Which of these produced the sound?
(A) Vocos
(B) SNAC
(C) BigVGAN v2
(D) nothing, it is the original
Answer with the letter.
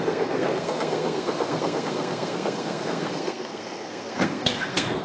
B